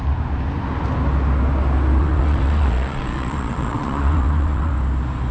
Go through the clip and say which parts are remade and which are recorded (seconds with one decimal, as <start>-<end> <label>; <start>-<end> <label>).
0.0-2.0 recorded; 2.0-4.7 remade; 4.7-5.3 recorded